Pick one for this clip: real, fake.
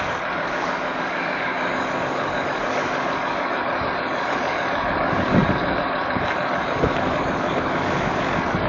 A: fake